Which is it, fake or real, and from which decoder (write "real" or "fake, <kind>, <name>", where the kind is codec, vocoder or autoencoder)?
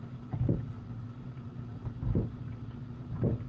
real